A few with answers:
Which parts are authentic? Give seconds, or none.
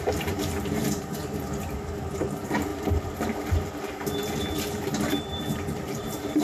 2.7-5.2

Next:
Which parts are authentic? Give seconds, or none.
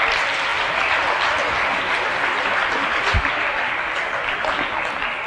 0.0-5.3